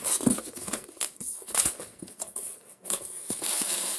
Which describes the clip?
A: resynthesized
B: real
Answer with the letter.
A